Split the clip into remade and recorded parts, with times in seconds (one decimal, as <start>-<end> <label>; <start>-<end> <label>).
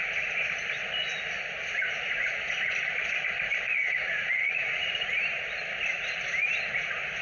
0.0-3.8 recorded; 3.8-4.9 remade; 4.9-7.2 recorded